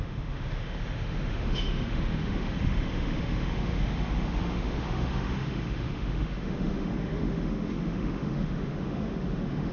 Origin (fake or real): fake